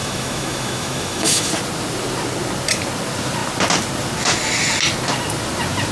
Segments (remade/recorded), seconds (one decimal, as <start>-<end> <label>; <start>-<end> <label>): 0.0-1.5 remade; 1.5-5.9 recorded